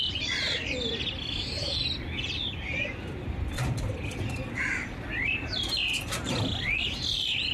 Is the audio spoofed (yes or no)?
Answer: no